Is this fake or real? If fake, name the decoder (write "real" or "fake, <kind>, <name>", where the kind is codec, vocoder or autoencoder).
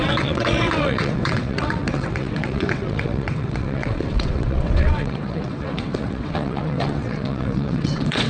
fake, vocoder, WaveNeXt